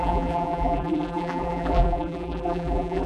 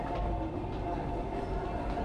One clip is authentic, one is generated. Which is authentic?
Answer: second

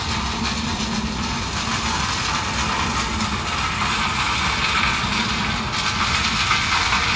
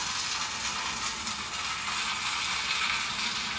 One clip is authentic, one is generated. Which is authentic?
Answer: second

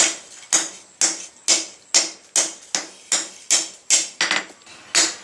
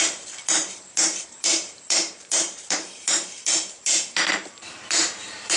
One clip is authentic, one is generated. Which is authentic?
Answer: first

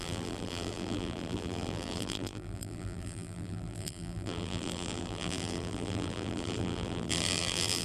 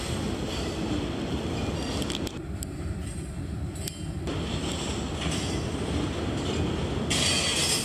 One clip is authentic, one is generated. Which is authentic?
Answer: second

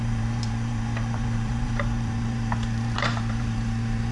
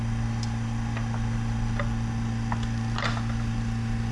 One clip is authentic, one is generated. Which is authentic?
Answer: second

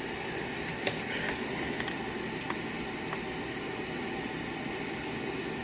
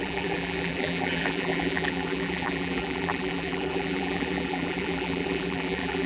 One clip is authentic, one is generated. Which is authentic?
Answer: first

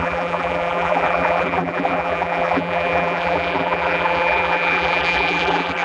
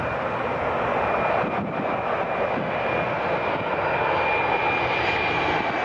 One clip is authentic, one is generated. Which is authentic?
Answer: second